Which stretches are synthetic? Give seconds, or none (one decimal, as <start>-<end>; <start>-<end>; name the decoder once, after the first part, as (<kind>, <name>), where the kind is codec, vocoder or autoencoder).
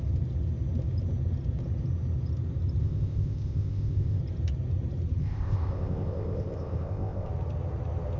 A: 2.8-4.2 (codec, ZipCodec); 5.2-7.3